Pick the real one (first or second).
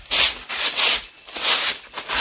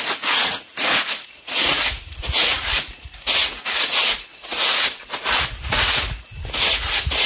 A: first